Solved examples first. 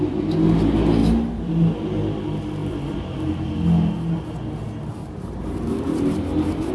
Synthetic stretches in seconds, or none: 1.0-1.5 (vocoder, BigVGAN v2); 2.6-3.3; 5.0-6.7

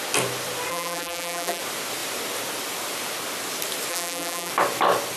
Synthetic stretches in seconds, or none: 0.7-1.6 (vocoder, BigVGAN v2); 3.9-4.5

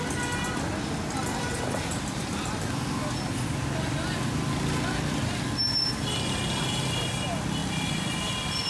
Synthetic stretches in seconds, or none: 7.6-8.7 (vocoder, BigVGAN v2)

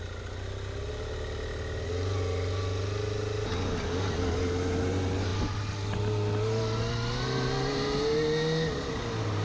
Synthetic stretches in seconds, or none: none

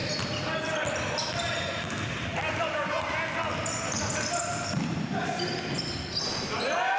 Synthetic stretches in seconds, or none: 0.0-0.5 (vocoder, BigVGAN v2); 4.5-5.1

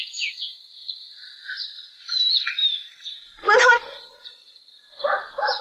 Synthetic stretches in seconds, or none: 2.6-4.6 (vocoder, BigVGAN v2)

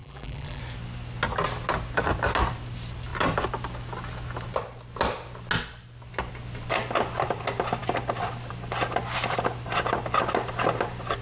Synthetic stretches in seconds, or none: 0.0-0.6 (vocoder, BigVGAN v2)

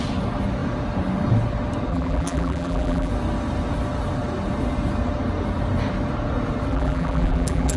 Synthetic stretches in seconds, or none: 1.9-3.1 (vocoder, BigVGAN v2); 6.7-7.8